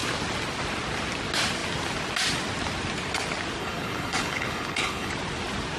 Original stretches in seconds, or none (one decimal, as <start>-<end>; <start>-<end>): 0.0-3.6; 5.1-5.8